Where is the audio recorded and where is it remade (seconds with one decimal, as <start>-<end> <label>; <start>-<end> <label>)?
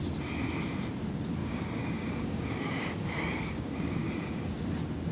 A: 0.0-1.4 recorded; 1.4-4.1 remade; 4.1-5.1 recorded